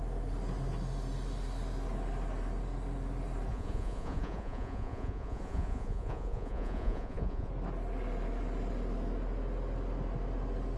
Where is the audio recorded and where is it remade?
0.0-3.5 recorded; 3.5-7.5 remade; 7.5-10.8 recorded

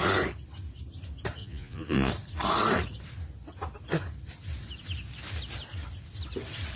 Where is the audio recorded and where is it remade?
0.0-1.4 recorded; 1.4-2.1 remade; 2.1-6.8 recorded

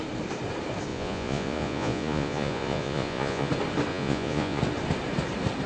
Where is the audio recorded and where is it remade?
0.0-0.9 recorded; 0.9-3.5 remade; 3.5-3.9 recorded; 3.9-4.6 remade; 4.6-5.7 recorded

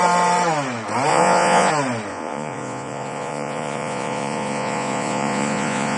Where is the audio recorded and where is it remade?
0.0-1.1 recorded; 1.1-1.7 remade; 1.7-2.1 recorded; 2.1-6.0 remade

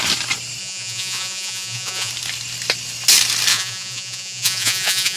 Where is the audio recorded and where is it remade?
0.0-0.6 recorded; 0.6-2.1 remade; 2.1-3.5 recorded; 3.5-5.2 remade

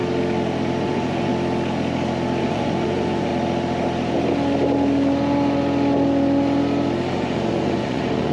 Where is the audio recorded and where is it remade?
0.0-0.8 recorded; 0.8-1.3 remade; 1.3-2.4 recorded; 2.4-3.3 remade; 3.3-7.1 recorded; 7.1-8.3 remade

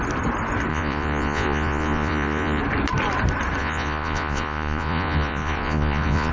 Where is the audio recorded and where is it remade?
0.0-0.7 recorded; 0.7-2.6 remade; 2.6-3.6 recorded; 3.6-6.3 remade